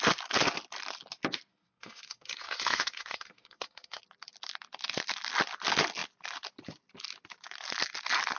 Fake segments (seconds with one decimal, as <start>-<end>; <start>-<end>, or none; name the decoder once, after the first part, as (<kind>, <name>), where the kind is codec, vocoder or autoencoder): 1.5-4.0 (codec, SNAC)